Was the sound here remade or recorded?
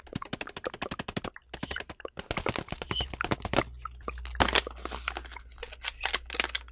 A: recorded